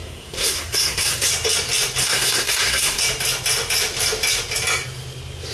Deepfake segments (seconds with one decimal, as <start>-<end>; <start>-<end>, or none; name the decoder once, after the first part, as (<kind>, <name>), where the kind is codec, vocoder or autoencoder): 0.0-1.3 (codec, SNAC); 2.0-3.0